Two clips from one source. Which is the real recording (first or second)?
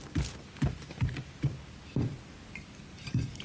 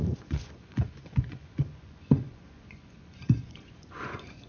first